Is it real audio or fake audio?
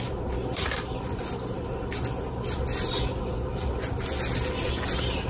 real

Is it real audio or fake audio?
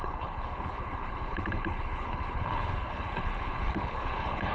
fake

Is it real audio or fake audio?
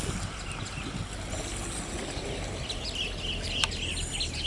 real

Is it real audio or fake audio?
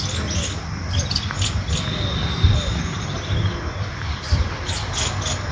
real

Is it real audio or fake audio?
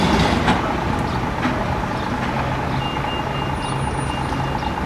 real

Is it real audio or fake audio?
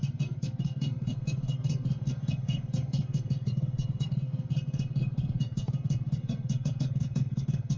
fake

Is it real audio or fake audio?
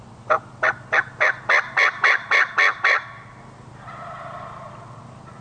real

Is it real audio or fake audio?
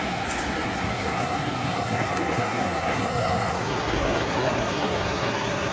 fake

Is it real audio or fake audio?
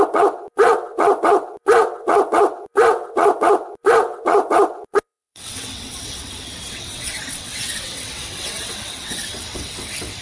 fake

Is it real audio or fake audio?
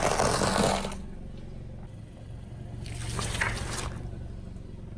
real